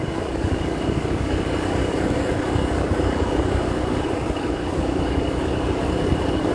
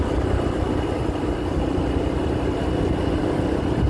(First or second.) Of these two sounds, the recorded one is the second